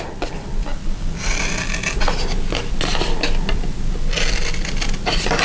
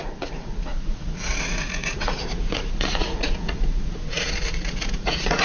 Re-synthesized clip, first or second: second